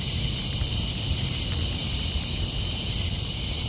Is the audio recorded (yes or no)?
yes